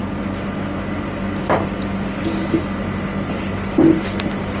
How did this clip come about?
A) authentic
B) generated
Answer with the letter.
A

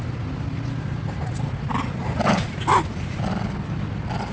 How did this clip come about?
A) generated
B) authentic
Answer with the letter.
B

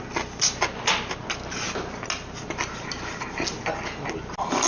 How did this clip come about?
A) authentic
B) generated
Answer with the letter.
A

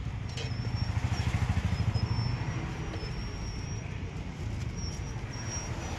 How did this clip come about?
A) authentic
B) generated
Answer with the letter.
A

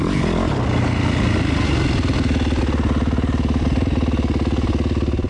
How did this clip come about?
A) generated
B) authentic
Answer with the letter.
B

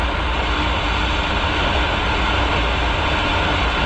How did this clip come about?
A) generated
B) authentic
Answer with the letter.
B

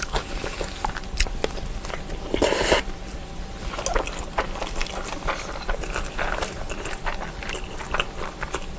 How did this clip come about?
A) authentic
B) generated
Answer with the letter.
A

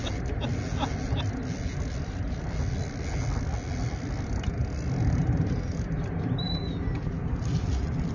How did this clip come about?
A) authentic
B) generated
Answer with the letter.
A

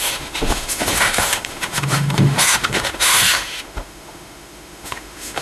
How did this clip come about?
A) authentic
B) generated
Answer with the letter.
B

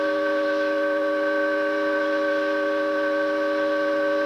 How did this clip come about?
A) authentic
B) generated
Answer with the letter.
A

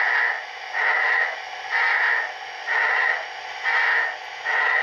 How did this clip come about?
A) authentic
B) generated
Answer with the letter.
A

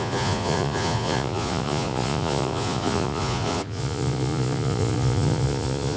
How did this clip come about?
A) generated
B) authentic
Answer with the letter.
A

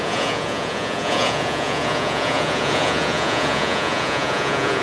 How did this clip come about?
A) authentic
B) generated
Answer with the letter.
B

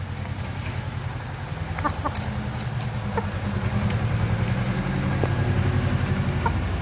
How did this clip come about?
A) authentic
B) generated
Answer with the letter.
A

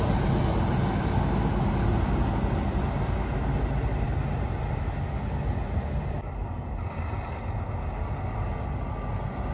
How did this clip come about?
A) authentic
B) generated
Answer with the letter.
A